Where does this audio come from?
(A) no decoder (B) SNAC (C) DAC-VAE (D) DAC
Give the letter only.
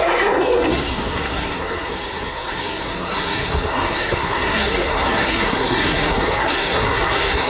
B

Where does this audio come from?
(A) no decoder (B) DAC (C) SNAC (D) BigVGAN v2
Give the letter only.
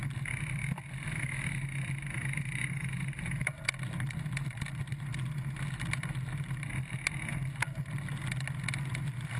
A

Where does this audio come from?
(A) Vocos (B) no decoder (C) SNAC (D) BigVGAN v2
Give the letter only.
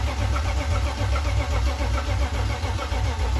B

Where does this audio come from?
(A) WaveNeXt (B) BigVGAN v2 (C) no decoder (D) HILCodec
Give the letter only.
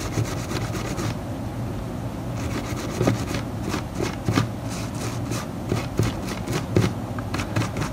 C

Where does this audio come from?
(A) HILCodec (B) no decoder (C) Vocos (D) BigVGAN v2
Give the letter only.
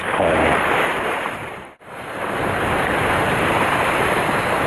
D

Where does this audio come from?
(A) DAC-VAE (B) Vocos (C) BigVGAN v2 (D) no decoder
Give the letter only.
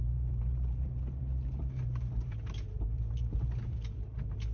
C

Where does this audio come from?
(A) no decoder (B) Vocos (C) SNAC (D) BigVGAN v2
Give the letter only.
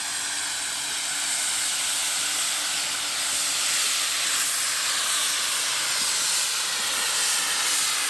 A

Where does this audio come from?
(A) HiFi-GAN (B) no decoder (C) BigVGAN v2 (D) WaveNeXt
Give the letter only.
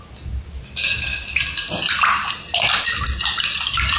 B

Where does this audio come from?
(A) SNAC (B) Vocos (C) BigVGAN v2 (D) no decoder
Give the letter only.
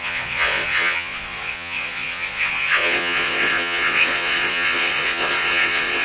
B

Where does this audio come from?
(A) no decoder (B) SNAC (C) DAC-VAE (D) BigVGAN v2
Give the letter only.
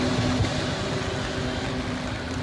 A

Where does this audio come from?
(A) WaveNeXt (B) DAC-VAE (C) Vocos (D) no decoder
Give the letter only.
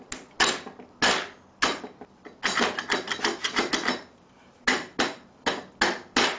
D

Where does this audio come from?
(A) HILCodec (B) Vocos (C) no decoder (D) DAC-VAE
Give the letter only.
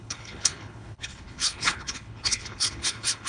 A